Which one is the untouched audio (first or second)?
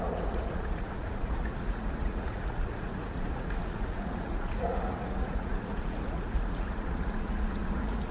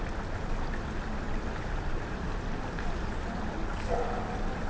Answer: second